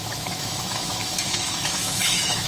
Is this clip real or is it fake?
fake